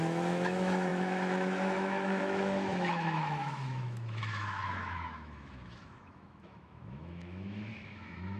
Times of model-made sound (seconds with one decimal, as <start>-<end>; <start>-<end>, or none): 0.0-8.4